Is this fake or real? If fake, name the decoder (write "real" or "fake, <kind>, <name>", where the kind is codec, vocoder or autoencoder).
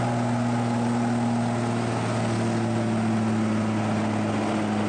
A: real